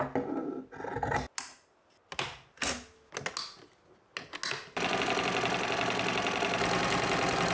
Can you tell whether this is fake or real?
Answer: real